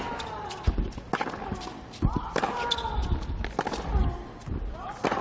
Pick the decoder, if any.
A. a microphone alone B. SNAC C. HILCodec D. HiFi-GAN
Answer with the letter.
A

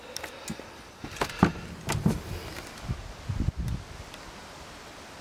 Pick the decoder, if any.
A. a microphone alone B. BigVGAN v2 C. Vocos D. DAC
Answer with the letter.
A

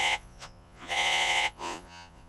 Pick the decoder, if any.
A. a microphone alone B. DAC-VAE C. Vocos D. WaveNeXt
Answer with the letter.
C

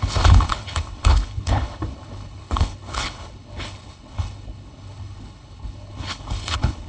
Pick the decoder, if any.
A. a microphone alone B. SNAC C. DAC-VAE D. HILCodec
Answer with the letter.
D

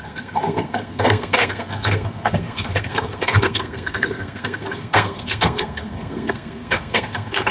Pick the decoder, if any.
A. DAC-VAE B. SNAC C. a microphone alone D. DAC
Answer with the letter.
B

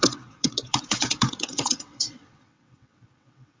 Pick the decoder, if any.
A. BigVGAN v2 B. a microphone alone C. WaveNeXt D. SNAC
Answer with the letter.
C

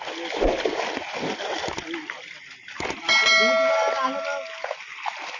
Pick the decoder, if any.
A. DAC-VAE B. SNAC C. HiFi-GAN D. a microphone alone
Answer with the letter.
D